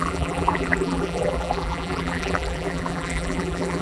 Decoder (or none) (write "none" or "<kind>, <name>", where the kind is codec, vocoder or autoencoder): vocoder, BigVGAN v2